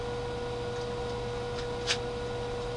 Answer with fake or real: real